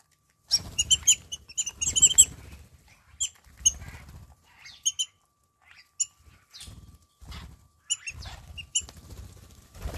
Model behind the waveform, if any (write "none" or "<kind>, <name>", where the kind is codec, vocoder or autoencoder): none